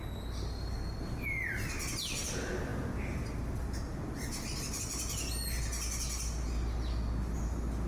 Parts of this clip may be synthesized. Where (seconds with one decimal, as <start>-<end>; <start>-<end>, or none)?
none